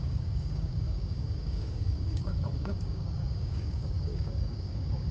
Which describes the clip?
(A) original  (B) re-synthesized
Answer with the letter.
B